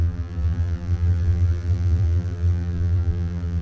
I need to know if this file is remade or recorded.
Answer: remade